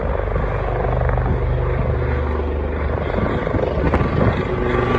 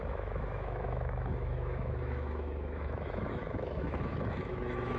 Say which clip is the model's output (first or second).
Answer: second